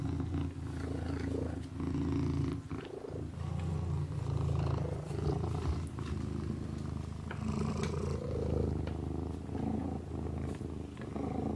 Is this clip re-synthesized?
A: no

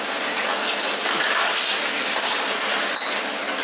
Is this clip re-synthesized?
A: no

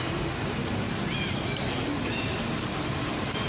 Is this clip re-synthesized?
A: no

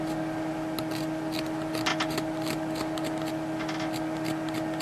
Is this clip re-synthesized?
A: no